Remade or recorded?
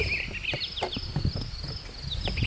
recorded